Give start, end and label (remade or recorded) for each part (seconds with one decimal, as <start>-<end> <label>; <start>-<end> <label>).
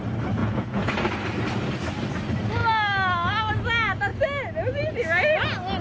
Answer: 0.0-0.4 recorded; 0.4-0.9 remade; 0.9-5.8 recorded